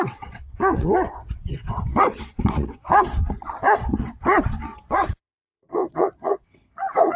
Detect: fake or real fake